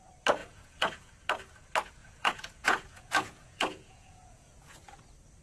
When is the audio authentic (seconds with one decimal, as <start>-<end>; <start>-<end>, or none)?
0.0-0.4; 1.1-2.0; 5.0-5.4